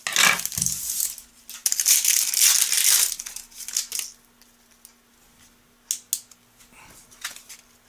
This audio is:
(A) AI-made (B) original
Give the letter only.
B